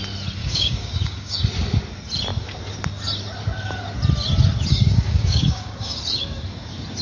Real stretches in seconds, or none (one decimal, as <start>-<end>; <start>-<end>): 0.0-0.4; 1.4-4.7; 6.0-7.0